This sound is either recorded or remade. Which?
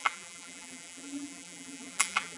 remade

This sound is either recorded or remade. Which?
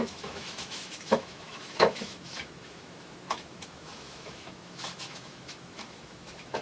remade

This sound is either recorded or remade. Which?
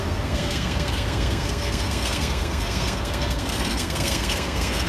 remade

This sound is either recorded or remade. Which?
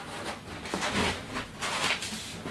remade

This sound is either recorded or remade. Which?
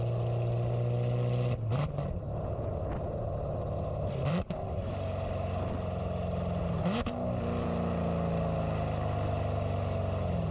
recorded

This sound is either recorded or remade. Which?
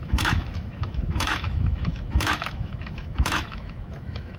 remade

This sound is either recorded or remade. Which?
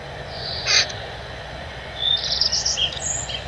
remade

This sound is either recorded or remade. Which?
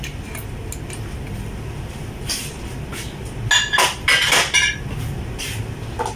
recorded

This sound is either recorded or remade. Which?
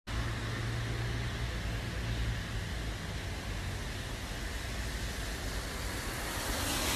recorded